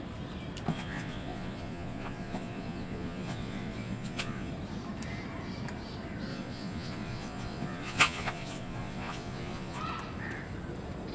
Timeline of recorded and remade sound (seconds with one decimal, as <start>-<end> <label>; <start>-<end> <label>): 0.0-0.7 recorded; 0.7-4.5 remade; 4.5-6.3 recorded; 6.3-9.8 remade; 9.8-11.1 recorded